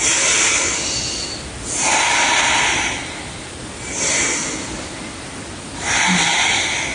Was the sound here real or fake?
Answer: real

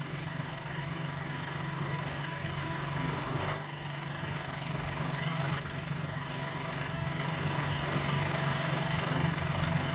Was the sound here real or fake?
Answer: fake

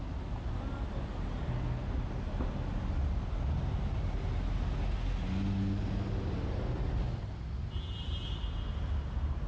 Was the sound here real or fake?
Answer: real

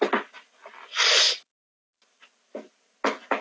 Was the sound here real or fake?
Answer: real